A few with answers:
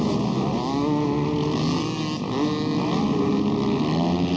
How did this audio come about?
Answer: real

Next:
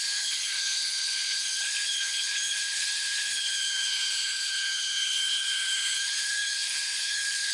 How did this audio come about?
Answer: fake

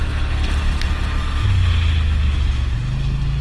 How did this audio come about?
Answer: real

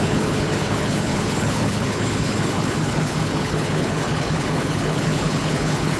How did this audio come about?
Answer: fake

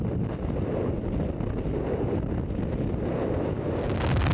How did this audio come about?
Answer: real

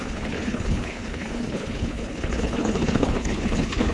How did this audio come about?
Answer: fake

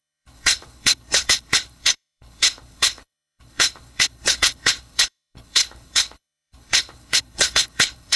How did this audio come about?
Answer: fake